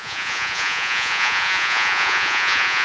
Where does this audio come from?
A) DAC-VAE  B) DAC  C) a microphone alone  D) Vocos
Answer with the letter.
D